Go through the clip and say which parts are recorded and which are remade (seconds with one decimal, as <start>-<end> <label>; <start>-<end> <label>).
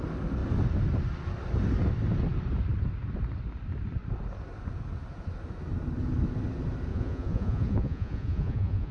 0.0-6.9 recorded; 6.9-8.9 remade